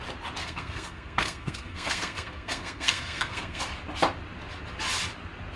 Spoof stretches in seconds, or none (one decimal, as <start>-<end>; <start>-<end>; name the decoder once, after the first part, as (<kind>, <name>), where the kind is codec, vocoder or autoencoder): 0.4-3.6 (codec, SNAC)